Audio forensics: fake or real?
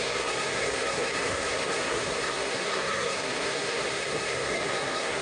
fake